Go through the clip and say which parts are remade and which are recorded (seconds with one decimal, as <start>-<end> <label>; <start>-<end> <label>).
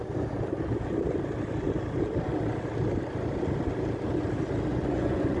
0.0-4.7 recorded; 4.7-5.4 remade